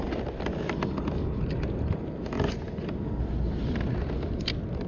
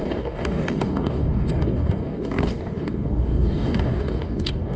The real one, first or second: first